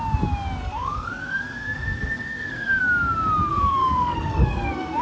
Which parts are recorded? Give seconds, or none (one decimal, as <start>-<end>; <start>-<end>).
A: 0.0-0.6; 2.8-3.5